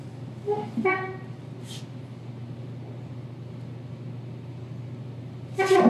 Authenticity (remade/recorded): recorded